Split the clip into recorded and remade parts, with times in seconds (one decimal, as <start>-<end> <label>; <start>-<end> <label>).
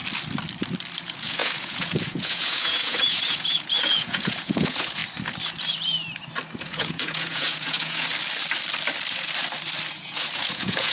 0.0-1.0 recorded; 1.0-5.0 remade; 5.0-6.6 recorded; 6.6-8.1 remade; 8.1-9.9 recorded; 9.9-10.9 remade